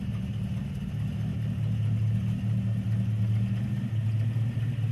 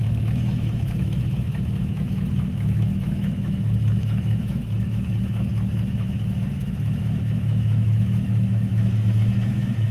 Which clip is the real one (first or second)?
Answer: first